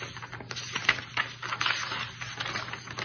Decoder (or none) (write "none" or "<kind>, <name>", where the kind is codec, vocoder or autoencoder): none